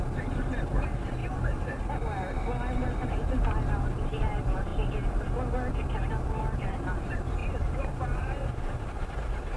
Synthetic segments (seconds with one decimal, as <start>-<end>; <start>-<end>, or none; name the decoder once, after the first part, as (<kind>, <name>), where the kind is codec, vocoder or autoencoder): 0.0-1.2 (vocoder, BigVGAN v2); 4.2-4.7; 6.1-9.6